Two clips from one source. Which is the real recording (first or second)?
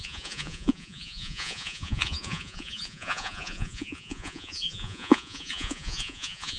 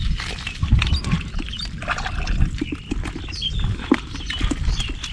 second